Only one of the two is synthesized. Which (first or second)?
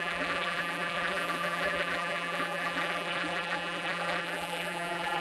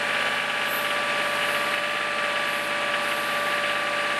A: first